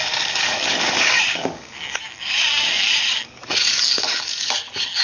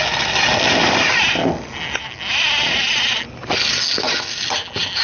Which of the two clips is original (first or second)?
second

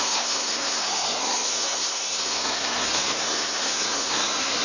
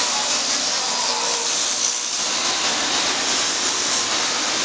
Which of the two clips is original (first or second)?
second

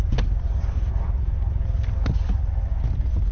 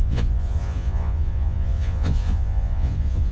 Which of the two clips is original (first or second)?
first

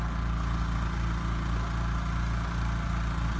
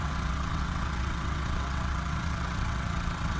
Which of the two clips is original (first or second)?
first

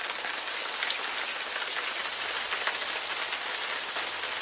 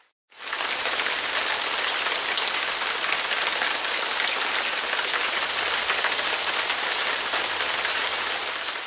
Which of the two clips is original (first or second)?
first